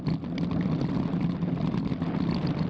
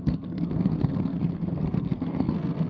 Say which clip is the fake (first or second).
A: second